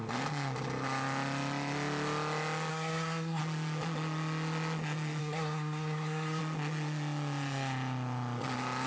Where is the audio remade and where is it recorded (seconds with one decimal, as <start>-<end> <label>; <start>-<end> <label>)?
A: 0.0-2.7 recorded; 2.7-3.4 remade; 3.4-5.2 recorded; 5.2-6.4 remade; 6.4-8.9 recorded